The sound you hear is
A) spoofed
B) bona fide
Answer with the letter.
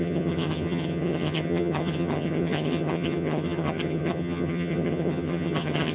A